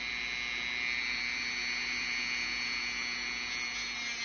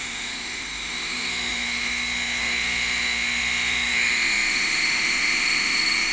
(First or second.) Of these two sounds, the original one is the first